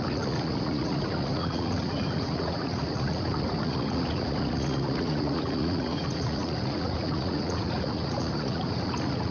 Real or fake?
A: fake